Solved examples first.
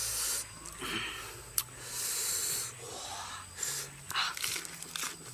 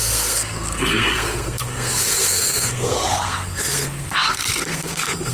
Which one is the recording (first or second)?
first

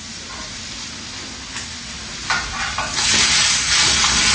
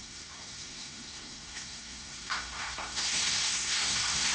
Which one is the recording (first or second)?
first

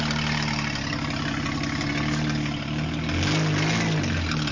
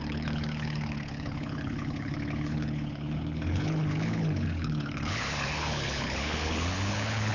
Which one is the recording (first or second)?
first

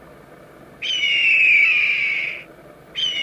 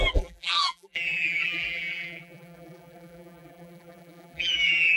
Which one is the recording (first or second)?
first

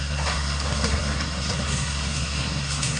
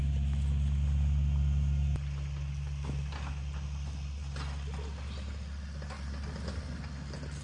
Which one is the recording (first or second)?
second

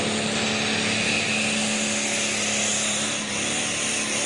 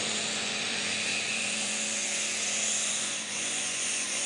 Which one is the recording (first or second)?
first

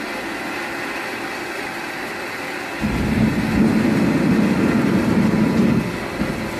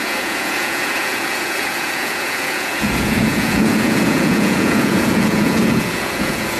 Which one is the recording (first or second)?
first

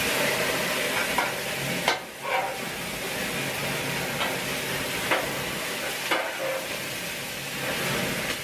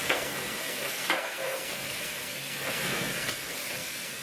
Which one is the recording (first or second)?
first